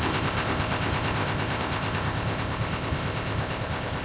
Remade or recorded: remade